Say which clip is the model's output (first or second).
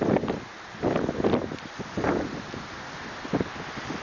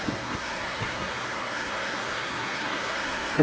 second